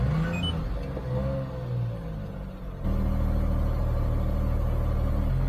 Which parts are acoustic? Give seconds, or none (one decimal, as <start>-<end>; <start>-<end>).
0.0-5.5